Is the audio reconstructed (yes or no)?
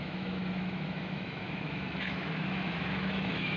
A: yes